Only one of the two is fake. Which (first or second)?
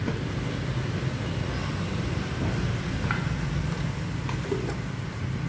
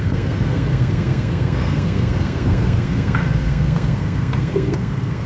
second